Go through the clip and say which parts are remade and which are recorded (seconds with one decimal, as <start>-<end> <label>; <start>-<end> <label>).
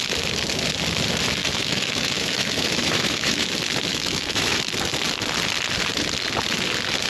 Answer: 0.0-1.4 recorded; 1.4-3.5 remade; 3.5-3.9 recorded; 3.9-4.6 remade; 4.6-7.1 recorded